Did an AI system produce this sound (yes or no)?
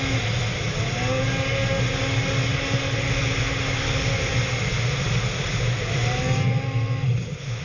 no